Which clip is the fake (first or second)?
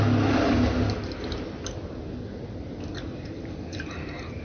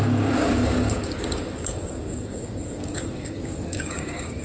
second